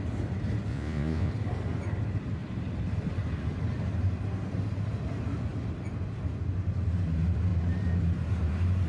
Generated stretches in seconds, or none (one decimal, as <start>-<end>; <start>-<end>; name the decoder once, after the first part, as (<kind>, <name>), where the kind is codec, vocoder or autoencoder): 0.7-1.3 (vocoder, Vocos)